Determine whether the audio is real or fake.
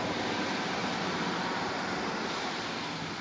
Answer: real